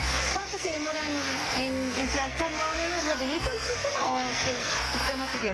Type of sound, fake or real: fake